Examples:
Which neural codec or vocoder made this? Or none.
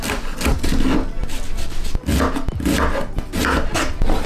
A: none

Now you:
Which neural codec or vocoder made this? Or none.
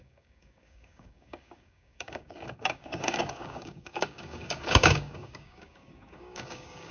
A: codec, DAC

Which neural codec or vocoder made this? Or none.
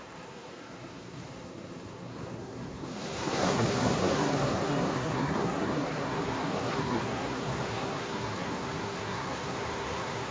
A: codec, SNAC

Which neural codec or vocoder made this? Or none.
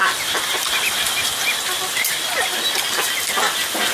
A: none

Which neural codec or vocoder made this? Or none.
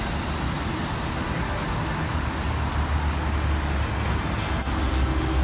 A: none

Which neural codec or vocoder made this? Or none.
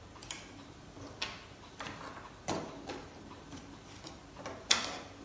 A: none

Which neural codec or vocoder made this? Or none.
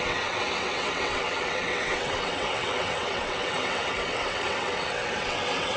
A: vocoder, WaveNeXt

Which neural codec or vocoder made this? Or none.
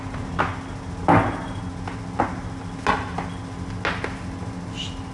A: none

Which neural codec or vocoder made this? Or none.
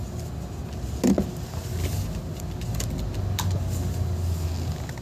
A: none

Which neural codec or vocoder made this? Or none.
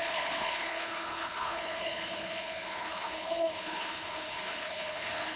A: codec, HILCodec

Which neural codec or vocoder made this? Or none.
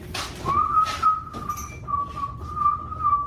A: none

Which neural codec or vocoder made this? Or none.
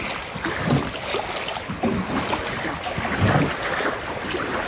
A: none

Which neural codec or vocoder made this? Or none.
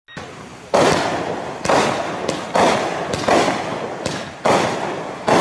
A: none